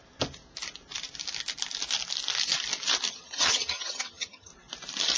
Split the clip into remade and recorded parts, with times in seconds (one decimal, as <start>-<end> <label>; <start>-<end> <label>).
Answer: 0.0-3.1 recorded; 3.1-4.5 remade; 4.5-5.2 recorded